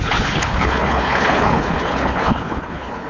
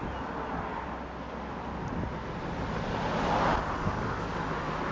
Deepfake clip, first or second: first